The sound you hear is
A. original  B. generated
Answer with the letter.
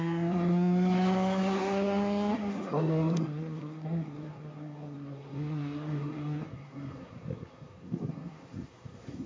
B